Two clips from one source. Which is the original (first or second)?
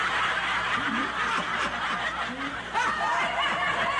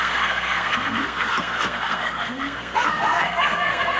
first